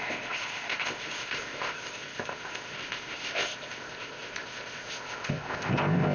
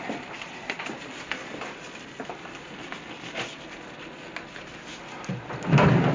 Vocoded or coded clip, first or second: first